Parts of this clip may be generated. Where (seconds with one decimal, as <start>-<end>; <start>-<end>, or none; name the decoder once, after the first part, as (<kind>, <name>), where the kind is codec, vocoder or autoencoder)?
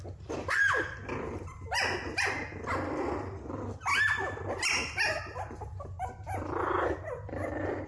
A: none